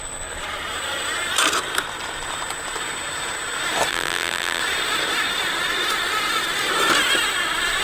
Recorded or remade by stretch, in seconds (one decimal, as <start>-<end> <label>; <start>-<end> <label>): 0.0-3.9 recorded; 3.9-4.6 remade; 4.6-7.8 recorded